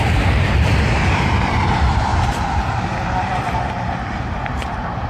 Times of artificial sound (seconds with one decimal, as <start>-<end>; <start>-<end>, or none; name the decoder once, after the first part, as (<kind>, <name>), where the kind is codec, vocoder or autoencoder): 0.0-2.1 (vocoder, BigVGAN v2); 4.5-5.1